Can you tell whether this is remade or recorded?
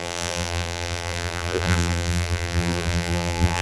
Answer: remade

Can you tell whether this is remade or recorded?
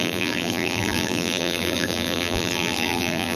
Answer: remade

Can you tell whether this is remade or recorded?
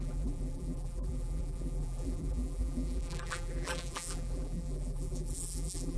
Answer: remade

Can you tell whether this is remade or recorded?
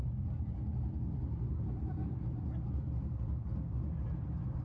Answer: remade